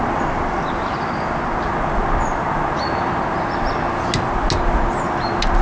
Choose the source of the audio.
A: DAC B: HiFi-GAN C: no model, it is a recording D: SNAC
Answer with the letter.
C